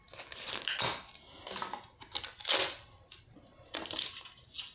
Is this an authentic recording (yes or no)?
yes